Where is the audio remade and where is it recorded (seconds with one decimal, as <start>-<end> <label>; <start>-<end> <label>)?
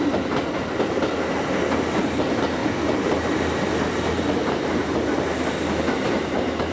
0.0-6.7 recorded